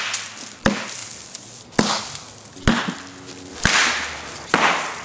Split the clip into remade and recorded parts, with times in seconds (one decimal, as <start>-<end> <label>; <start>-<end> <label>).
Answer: 0.0-5.0 recorded